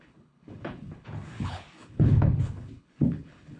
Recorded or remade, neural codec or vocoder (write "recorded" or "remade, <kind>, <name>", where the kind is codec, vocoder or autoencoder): remade, codec, HILCodec